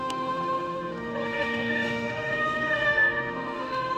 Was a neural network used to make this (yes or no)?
yes